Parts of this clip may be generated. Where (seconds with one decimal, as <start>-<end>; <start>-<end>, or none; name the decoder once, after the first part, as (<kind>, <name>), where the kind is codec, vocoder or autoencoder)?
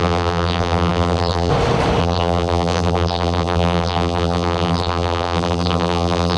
0.0-1.5 (vocoder, BigVGAN v2); 2.0-6.4